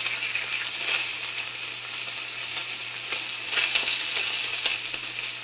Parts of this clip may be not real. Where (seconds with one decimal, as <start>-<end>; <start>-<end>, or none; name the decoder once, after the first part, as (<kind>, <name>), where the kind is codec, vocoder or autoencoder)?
none